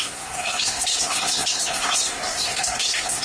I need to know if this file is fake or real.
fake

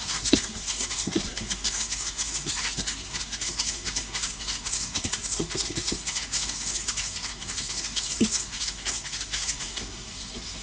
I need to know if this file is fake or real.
fake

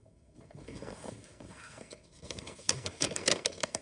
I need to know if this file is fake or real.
fake